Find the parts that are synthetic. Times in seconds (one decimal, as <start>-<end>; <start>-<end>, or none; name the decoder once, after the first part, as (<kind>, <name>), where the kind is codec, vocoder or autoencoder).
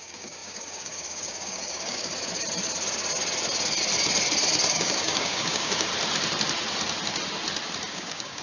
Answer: 0.0-2.1 (codec, DAC); 4.7-5.9; 7.9-8.4